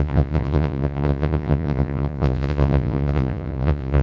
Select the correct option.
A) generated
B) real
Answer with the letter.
A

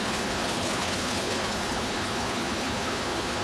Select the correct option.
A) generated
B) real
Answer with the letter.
A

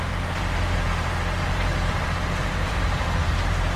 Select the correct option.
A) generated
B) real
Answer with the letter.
A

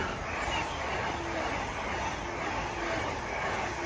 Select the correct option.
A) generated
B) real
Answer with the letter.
B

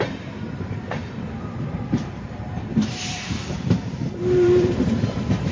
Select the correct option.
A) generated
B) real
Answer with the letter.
A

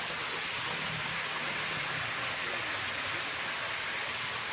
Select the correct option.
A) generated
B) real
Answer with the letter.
B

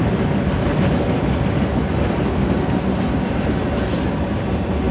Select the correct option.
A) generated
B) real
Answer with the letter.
B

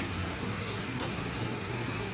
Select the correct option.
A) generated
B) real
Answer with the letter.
A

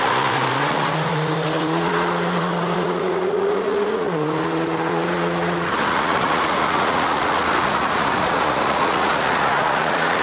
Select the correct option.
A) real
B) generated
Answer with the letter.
B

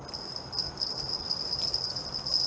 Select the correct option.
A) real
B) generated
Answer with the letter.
A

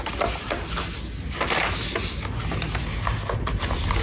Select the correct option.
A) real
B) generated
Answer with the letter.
A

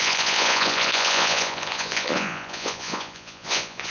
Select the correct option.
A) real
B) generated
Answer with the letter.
B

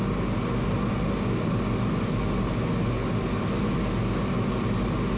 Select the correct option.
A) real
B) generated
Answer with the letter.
A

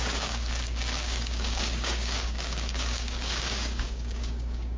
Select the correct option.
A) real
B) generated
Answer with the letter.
B